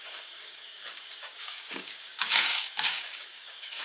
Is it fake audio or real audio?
fake